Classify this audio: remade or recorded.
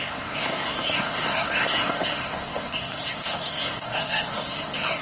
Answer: remade